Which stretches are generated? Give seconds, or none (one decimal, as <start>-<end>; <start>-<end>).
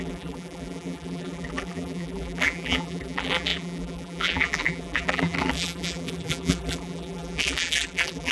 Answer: 0.0-8.3